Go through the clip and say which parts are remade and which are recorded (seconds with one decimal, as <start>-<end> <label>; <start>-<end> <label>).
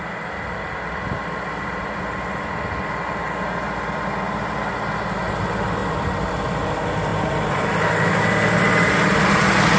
0.0-9.8 recorded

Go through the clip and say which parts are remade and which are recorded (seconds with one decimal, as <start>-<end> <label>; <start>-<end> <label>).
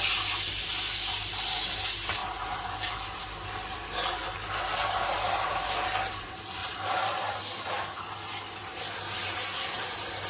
0.0-10.3 recorded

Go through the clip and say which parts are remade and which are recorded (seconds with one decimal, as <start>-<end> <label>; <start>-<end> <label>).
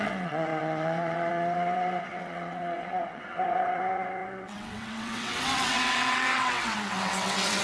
0.0-7.6 remade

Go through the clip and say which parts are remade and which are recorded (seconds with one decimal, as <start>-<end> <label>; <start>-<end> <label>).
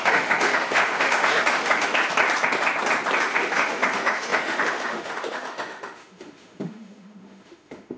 0.0-2.0 remade; 2.0-3.2 recorded; 3.2-8.0 remade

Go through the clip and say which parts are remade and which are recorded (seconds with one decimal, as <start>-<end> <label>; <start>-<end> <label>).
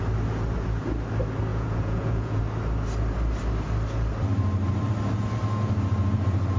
0.0-1.5 recorded; 1.5-2.4 remade; 2.4-6.6 recorded